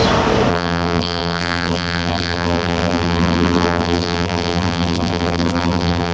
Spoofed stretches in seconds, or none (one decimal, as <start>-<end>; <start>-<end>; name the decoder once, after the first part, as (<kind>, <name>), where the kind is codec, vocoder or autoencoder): 0.5-6.1 (vocoder, BigVGAN v2)